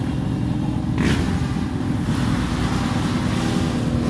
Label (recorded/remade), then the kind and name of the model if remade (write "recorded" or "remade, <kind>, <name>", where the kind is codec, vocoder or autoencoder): recorded